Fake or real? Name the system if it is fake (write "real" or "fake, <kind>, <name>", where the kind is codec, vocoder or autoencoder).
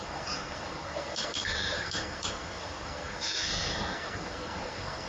fake, codec, SNAC